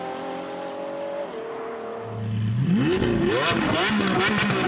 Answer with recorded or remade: recorded